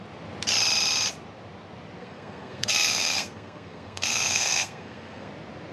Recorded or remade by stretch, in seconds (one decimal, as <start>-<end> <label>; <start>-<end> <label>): 0.0-2.0 recorded; 2.0-5.3 remade; 5.3-5.7 recorded